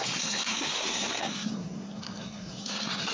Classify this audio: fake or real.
fake